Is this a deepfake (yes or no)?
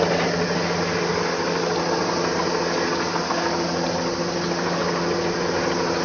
no